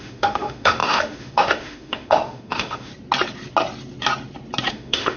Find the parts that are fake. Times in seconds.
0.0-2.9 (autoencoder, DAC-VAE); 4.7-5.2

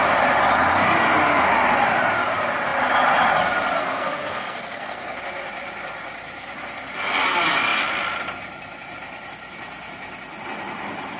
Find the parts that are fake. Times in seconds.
3.8-5.2 (codec, SNAC)

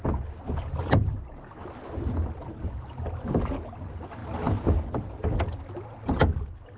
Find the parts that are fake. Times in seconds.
none

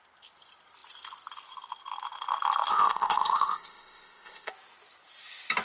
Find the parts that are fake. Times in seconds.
2.7-4.5 (codec, ZipCodec)